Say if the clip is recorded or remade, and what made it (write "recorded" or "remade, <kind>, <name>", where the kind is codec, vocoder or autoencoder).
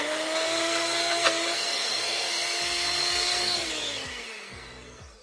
remade, codec, SNAC